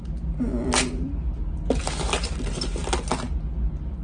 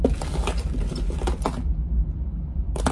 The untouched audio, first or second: first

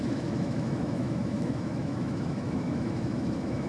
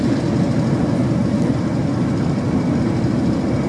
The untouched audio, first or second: second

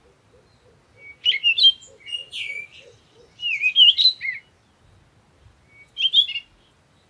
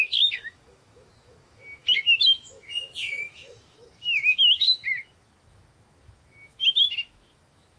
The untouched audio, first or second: first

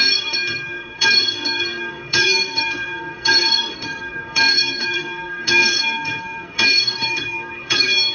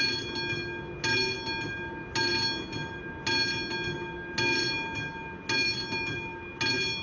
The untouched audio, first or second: second